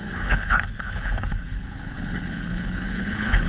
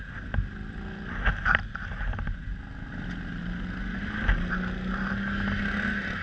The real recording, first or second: second